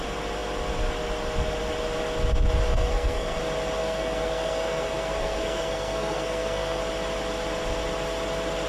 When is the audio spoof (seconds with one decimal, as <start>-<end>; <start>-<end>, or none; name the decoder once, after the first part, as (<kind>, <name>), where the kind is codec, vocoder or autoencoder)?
2.7-3.4 (codec, SNAC); 3.8-6.8